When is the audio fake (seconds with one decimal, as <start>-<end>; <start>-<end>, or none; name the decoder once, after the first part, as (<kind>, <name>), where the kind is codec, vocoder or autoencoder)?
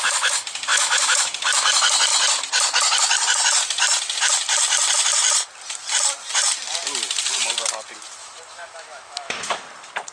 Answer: 0.7-1.3 (autoencoder, DAC-VAE); 8.2-9.6